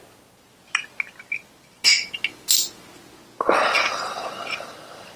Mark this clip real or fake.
real